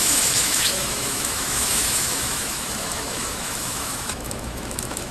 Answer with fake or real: fake